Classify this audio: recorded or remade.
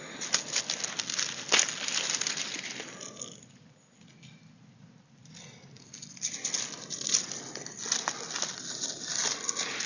recorded